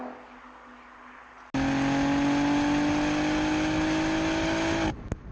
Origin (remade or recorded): recorded